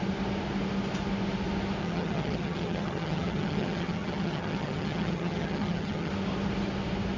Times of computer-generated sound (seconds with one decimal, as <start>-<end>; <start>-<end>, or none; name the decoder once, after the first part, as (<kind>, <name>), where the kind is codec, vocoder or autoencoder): 1.8-6.1 (vocoder, HiFi-GAN)